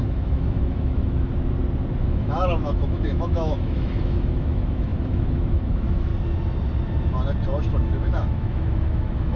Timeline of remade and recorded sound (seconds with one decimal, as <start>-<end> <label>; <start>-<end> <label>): 0.0-1.3 remade; 1.3-2.0 recorded; 2.0-6.1 remade; 6.1-7.7 recorded; 7.7-9.4 remade